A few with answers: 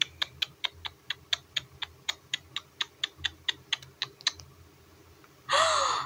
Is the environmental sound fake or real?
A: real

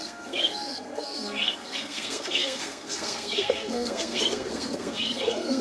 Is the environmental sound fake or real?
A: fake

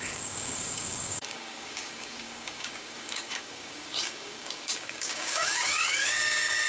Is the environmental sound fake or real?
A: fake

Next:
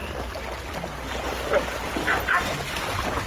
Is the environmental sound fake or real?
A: real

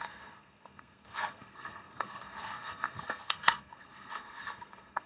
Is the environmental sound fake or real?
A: fake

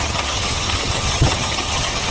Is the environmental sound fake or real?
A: fake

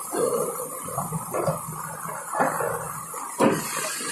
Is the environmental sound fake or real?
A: real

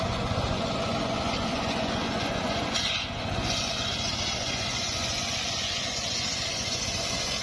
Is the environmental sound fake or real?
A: fake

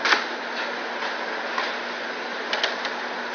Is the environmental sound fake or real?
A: real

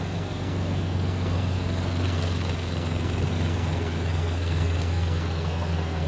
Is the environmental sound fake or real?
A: fake